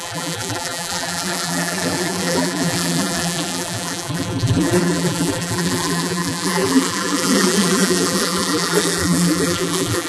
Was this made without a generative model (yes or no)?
no